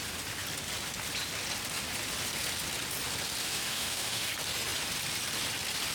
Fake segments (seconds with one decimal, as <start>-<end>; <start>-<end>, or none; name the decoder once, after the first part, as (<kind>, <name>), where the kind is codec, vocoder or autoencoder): 3.4-4.3 (autoencoder, DAC-VAE)